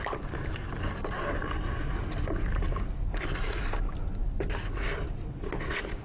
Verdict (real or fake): real